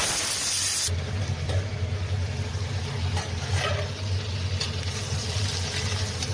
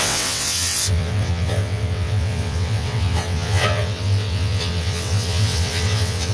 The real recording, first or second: first